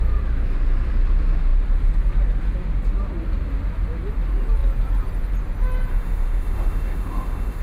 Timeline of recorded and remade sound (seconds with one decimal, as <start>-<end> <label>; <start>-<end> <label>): 0.0-5.9 recorded; 5.9-7.6 remade